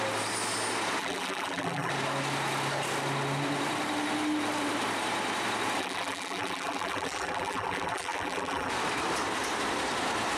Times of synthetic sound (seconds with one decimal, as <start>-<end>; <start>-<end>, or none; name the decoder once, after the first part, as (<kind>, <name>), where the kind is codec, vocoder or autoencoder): 1.0-1.9 (vocoder, BigVGAN v2); 5.8-8.7